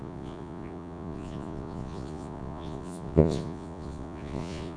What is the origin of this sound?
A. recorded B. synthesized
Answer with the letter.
B